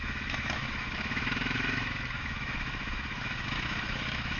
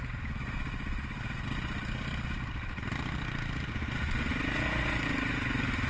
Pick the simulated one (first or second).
first